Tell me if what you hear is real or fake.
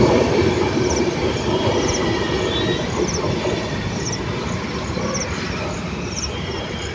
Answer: fake